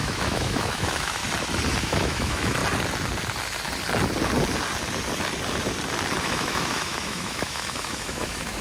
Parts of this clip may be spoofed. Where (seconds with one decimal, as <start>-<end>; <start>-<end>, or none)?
0.0-1.2; 1.8-2.6; 6.2-8.6